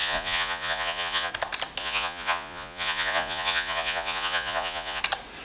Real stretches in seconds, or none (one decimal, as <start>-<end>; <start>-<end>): 1.3-1.8; 5.0-5.4